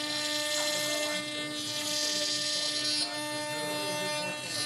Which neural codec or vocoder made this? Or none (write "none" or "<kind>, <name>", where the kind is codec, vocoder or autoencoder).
none